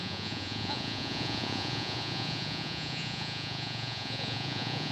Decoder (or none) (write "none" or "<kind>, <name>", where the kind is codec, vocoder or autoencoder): vocoder, Vocos